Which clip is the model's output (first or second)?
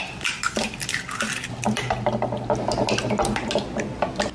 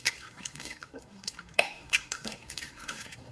second